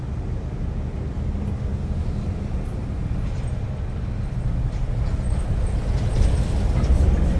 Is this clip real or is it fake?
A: real